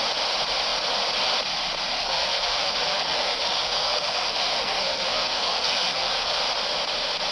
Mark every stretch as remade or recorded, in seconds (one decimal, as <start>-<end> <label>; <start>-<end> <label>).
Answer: 0.0-2.0 recorded; 2.0-6.4 remade; 6.4-7.3 recorded